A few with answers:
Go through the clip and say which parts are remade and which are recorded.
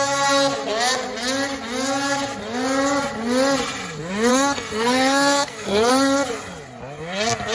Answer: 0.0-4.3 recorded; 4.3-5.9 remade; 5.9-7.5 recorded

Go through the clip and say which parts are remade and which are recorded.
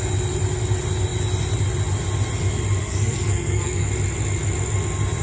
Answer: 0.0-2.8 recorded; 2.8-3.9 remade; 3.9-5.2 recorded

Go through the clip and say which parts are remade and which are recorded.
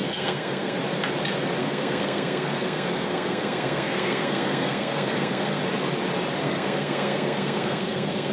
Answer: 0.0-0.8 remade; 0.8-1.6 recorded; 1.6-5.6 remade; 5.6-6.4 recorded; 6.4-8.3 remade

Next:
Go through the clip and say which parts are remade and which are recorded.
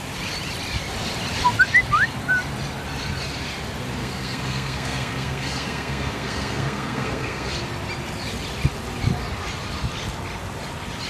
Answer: 0.0-4.0 recorded; 4.0-7.5 remade; 7.5-11.1 recorded